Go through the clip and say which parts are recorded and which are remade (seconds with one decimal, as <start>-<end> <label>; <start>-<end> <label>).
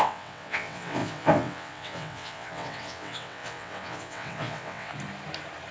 0.0-4.9 remade; 4.9-5.7 recorded